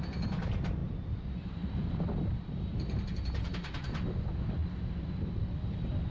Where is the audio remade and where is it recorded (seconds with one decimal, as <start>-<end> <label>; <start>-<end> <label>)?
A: 0.0-6.1 recorded

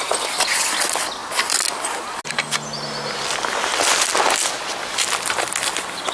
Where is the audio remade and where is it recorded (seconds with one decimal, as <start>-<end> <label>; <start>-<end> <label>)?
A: 0.0-6.1 recorded